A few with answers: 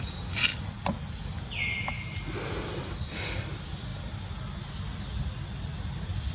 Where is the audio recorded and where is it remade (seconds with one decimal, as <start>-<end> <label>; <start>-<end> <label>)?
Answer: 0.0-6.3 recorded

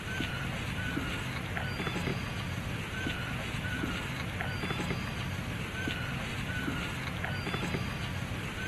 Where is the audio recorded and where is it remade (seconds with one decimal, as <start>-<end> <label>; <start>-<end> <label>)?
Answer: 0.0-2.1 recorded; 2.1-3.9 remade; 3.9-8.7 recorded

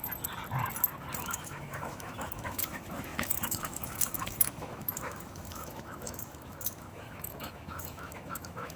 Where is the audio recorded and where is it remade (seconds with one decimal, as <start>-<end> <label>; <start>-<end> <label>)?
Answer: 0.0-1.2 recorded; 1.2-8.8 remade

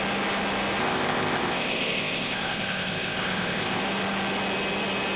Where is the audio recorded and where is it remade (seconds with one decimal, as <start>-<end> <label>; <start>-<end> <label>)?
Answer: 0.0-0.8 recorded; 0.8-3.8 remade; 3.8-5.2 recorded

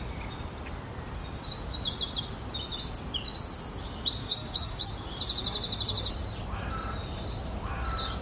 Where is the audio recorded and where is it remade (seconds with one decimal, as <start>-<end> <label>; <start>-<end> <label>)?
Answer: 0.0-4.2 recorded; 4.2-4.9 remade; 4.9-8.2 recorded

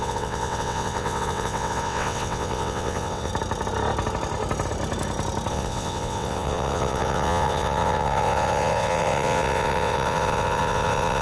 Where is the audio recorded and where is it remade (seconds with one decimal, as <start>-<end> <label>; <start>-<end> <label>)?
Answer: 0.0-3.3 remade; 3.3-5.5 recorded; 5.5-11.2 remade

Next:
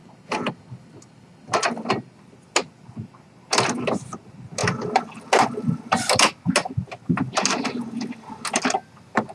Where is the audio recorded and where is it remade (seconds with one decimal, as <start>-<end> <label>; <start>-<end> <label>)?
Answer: 0.0-9.3 recorded

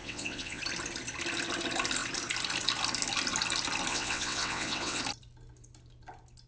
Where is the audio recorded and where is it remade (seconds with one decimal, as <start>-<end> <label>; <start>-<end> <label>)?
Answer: 0.0-0.6 remade; 0.6-3.9 recorded; 3.9-5.0 remade; 5.0-6.5 recorded